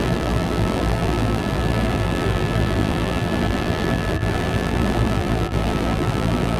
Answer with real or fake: fake